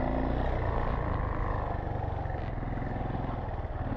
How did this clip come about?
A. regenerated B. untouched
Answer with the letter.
B